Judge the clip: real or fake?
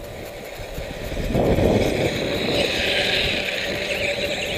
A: real